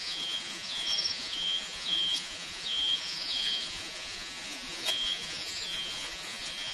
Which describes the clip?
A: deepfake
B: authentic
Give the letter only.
A